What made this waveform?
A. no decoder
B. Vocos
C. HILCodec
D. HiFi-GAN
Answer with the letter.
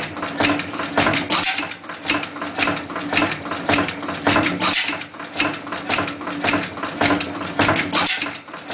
A